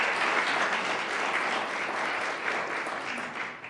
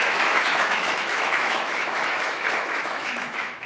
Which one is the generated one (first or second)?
second